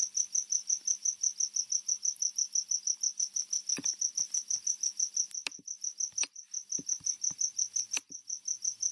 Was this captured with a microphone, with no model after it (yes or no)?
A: yes